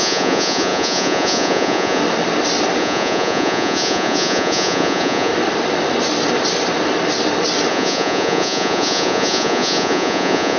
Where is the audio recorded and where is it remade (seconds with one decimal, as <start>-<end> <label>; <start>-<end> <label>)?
0.0-2.0 remade; 2.0-2.8 recorded; 2.8-5.3 remade; 5.3-7.7 recorded; 7.7-10.6 remade